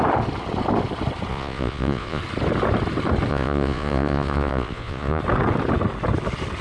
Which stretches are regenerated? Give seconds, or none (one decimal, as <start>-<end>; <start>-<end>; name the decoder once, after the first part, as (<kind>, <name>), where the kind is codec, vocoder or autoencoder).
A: 1.3-2.2 (vocoder, Vocos); 3.3-5.2